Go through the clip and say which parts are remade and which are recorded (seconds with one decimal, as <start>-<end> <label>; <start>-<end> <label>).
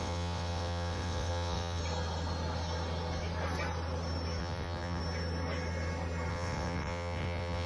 0.0-1.8 remade; 1.8-4.4 recorded; 4.4-5.0 remade; 5.0-6.3 recorded; 6.3-7.7 remade